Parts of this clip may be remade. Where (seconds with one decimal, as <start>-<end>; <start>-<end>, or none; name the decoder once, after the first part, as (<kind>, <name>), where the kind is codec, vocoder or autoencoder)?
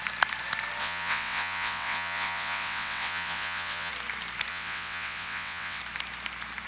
0.8-3.9 (vocoder, WaveNeXt); 4.5-5.8